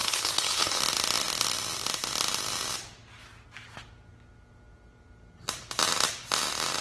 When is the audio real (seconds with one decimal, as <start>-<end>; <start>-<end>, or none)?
0.8-6.8